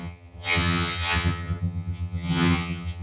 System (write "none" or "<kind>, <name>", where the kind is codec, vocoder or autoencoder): vocoder, HiFi-GAN